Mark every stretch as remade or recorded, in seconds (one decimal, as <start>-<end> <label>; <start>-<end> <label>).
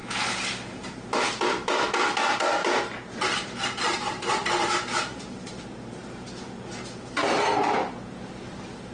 0.0-2.6 recorded; 2.6-5.6 remade; 5.6-8.9 recorded